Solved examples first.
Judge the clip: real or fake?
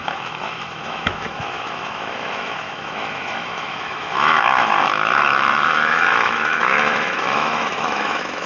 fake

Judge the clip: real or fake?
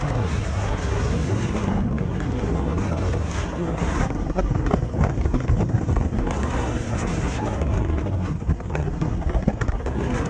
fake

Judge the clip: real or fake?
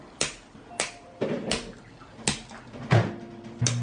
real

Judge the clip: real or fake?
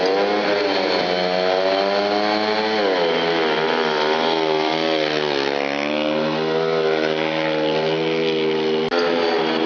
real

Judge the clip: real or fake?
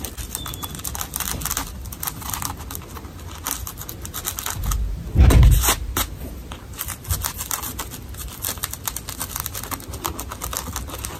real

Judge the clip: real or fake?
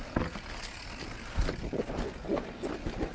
real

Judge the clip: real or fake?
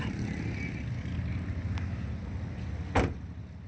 real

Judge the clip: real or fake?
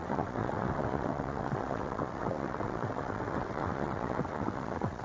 fake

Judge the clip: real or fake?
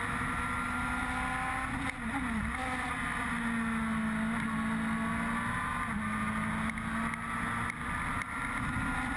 real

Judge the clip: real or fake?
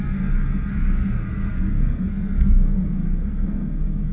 fake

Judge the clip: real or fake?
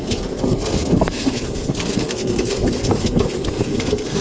fake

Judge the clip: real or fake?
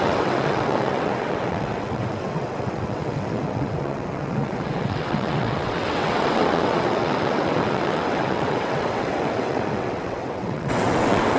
fake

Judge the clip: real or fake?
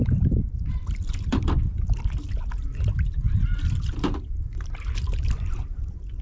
fake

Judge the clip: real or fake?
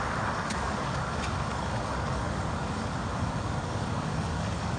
fake